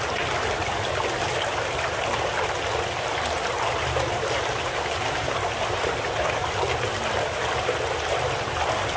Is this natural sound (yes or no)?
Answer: yes